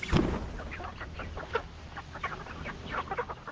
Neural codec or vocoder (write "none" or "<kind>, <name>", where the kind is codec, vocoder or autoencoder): none